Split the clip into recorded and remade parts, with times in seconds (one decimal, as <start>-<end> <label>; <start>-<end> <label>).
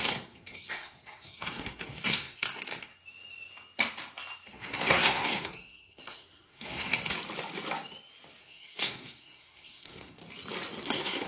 0.0-2.9 remade; 2.9-4.5 recorded; 4.5-7.0 remade; 7.0-8.4 recorded; 8.4-10.2 remade; 10.2-10.8 recorded; 10.8-11.3 remade